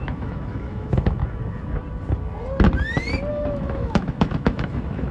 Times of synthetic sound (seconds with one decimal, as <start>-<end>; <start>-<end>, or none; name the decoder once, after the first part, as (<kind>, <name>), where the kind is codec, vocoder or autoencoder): 0.0-1.2 (autoencoder, DAC-VAE); 3.3-5.1